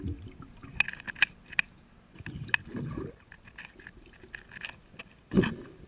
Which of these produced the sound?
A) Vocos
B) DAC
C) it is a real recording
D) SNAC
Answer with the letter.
C